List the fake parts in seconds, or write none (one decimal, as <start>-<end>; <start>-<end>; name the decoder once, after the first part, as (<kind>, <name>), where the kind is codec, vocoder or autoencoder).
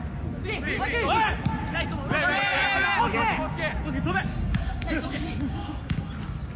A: 4.3-6.1 (codec, DAC)